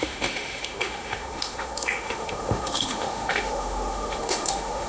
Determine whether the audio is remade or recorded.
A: remade